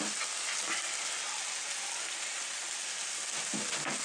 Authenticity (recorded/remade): recorded